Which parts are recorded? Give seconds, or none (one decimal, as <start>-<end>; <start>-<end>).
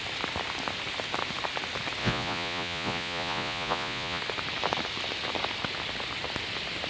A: 0.0-2.0; 4.2-6.9